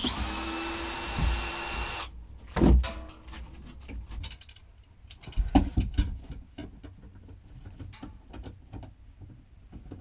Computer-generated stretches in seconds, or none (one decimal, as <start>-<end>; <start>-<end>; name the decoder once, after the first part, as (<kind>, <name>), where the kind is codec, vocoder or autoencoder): none